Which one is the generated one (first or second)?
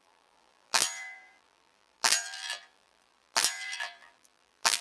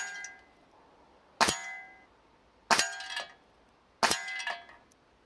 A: first